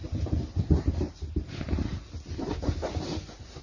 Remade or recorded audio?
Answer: remade